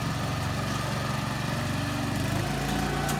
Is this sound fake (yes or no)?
no